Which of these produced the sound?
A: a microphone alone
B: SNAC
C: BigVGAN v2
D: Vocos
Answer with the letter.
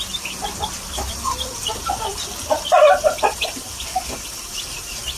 A